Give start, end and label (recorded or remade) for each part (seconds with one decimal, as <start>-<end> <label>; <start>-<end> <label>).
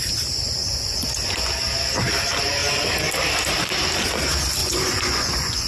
0.0-0.6 recorded; 0.6-1.5 remade; 1.5-4.6 recorded; 4.6-5.7 remade